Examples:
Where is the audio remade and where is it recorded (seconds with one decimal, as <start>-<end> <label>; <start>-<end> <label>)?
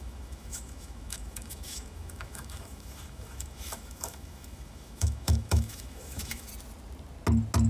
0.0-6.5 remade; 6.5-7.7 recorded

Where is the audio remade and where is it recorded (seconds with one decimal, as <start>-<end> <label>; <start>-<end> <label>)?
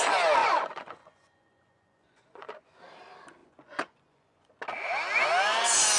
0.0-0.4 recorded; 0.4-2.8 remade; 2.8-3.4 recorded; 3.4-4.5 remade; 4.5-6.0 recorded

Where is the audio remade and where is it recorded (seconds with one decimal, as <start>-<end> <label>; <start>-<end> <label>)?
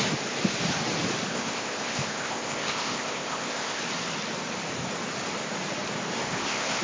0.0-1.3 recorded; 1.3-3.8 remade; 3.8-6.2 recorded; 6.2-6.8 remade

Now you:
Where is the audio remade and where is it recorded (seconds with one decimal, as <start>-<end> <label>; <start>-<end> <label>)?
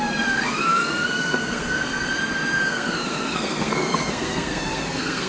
0.0-5.3 remade